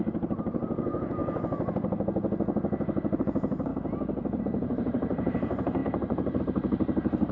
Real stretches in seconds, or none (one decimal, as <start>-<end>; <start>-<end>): 1.2-3.2; 3.7-4.4